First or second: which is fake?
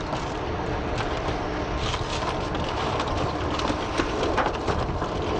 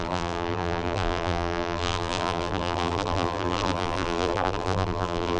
second